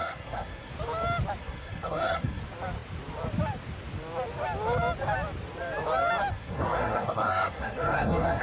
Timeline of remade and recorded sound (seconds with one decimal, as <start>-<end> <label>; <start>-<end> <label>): 0.0-0.7 remade; 0.7-1.4 recorded; 1.4-2.4 remade; 2.4-6.3 recorded; 6.3-8.4 remade